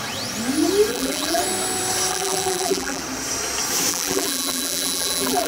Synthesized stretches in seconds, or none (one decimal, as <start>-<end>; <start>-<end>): 0.9-1.4; 2.1-3.0; 3.9-5.5